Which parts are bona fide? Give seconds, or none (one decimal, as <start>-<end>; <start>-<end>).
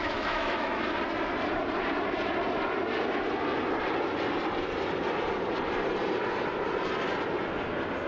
0.8-8.1